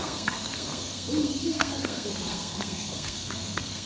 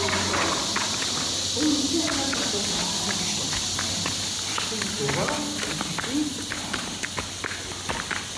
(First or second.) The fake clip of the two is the first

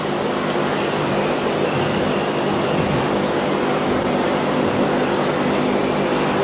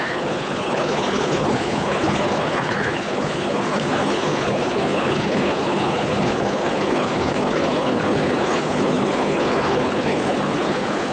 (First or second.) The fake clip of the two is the second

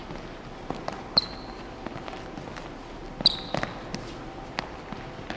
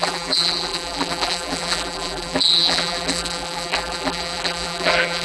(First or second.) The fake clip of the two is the second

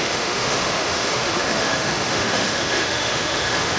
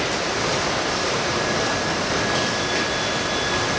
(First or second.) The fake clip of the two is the first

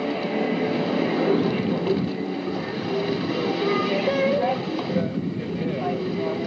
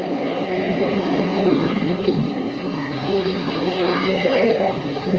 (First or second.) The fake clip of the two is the second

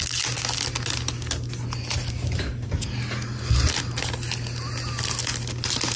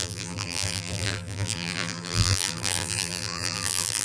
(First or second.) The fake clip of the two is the second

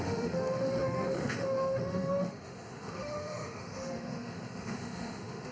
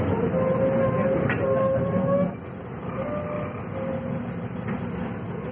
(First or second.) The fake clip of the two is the first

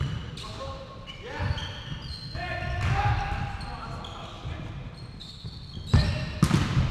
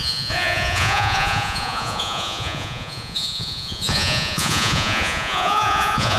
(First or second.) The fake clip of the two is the second